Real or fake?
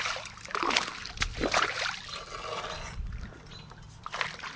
real